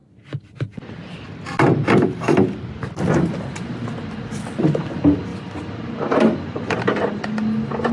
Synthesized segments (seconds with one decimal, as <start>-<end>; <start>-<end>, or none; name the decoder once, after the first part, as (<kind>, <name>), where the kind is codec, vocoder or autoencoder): none